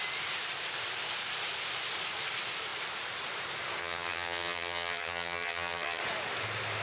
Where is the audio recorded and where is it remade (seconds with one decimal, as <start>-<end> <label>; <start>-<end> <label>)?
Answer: 0.0-3.8 recorded; 3.8-6.0 remade; 6.0-6.8 recorded